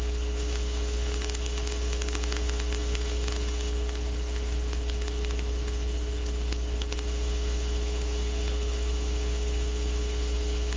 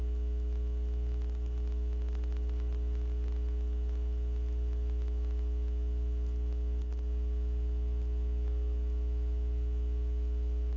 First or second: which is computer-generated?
first